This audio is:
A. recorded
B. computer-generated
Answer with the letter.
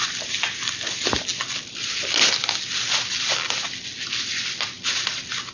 A